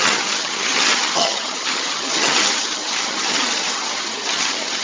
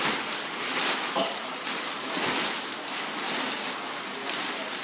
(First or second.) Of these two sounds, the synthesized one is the first